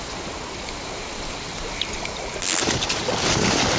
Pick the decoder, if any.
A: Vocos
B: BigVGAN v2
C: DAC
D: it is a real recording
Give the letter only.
D